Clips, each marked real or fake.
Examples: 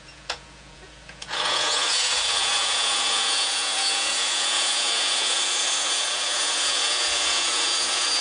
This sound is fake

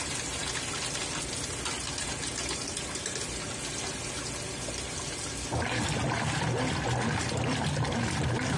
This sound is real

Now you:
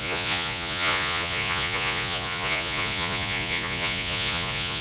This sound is fake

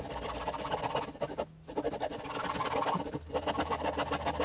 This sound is real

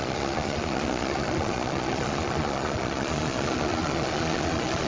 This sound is fake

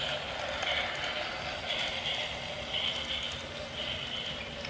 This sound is real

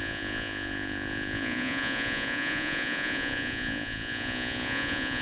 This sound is fake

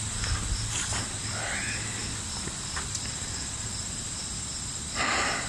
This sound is real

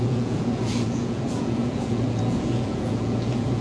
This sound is fake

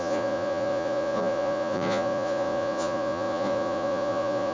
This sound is fake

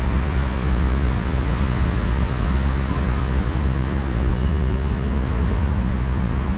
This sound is fake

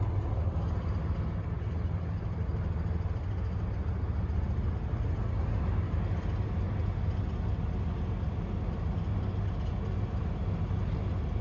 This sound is real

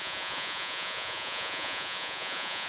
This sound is fake